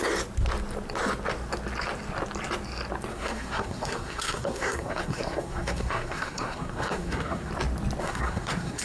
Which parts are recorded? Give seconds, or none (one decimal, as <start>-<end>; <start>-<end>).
0.0-3.1; 7.5-8.0